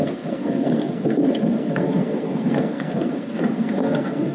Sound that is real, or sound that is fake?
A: fake